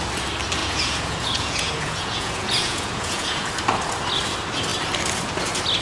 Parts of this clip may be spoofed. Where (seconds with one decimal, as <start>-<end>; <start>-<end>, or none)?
0.6-3.5